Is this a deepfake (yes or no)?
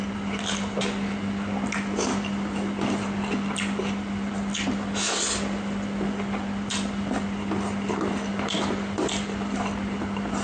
no